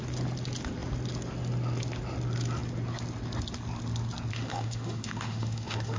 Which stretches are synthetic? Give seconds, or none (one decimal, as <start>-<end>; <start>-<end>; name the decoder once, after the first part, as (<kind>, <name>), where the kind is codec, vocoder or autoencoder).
4.3-6.0 (autoencoder, DAC-VAE)